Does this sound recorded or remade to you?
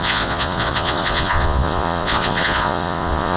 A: remade